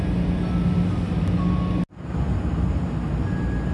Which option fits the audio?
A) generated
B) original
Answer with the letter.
B